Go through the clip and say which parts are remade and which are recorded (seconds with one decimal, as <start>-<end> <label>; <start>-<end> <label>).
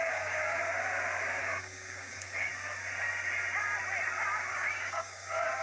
0.0-0.6 remade; 0.6-1.4 recorded; 1.4-2.5 remade; 2.5-4.5 recorded; 4.5-5.6 remade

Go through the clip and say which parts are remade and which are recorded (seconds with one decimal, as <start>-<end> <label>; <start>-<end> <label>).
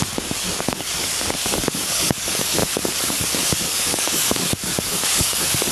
0.0-5.7 remade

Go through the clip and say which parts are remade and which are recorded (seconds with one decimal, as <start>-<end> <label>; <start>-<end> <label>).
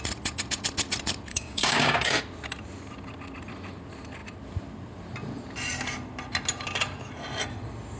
0.0-1.3 recorded; 1.3-2.2 remade; 2.2-8.0 recorded